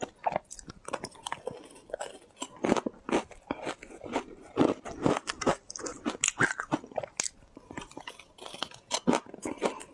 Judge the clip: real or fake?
real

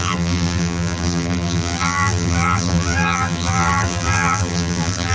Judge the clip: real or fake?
fake